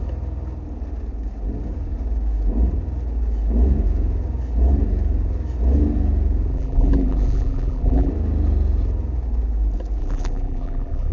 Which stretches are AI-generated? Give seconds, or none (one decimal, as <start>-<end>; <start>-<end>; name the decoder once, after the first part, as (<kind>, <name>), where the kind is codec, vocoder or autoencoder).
6.5-8.1 (vocoder, BigVGAN v2); 10.0-11.1